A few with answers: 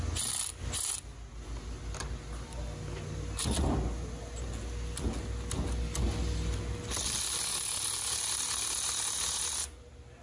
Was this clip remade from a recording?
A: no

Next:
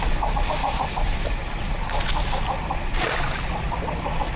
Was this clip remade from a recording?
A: no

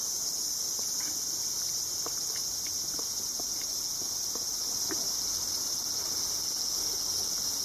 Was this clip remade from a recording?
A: no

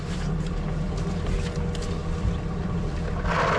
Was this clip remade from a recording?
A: no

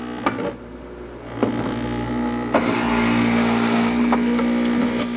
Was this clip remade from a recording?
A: no